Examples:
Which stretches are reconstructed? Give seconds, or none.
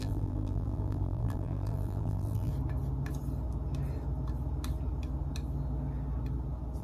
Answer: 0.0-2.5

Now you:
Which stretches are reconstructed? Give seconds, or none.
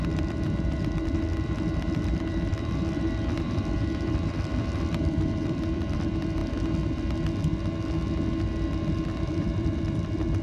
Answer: 0.0-6.4; 9.3-10.4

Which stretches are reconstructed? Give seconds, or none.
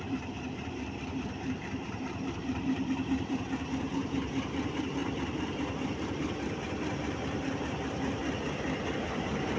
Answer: 0.0-8.2; 8.9-9.6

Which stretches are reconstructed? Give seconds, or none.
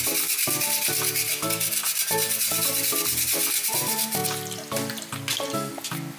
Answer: none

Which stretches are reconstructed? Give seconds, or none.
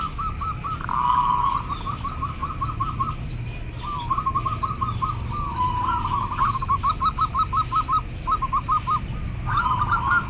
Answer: none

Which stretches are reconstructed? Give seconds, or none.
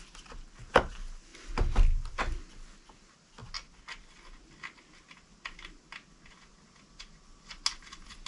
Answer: none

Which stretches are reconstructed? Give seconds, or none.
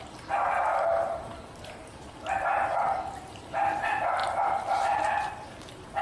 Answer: 4.2-5.3